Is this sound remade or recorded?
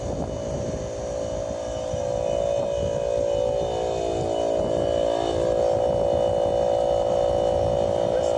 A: recorded